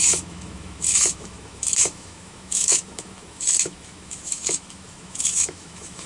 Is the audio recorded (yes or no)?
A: no